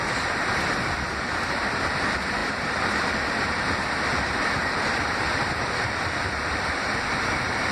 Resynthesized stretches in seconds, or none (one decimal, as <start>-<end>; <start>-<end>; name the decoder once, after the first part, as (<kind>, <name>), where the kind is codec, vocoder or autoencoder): 0.0-7.7 (vocoder, BigVGAN v2)